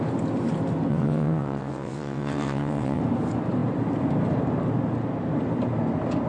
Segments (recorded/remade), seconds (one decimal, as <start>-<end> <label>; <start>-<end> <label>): 0.0-0.9 recorded; 0.9-3.0 remade; 3.0-6.3 recorded